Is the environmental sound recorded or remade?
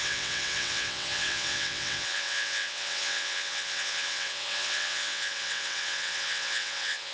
remade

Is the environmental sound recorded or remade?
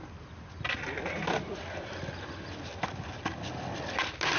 recorded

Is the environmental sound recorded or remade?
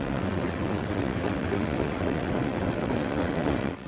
remade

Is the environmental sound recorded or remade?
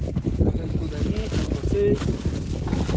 recorded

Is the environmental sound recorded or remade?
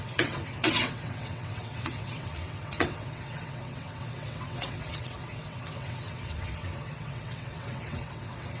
remade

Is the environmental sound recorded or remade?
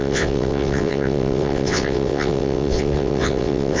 remade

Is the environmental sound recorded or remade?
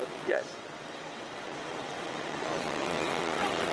remade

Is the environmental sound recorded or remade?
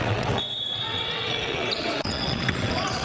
remade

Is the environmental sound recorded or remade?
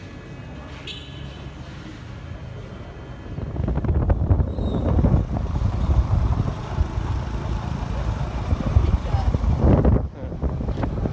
recorded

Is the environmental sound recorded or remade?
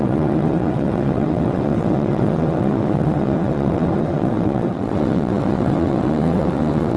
remade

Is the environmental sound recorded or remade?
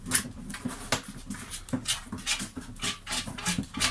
recorded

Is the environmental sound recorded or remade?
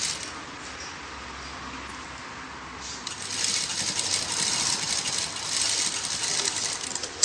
recorded